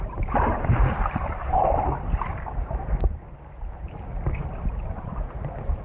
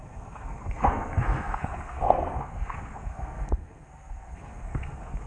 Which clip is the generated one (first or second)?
second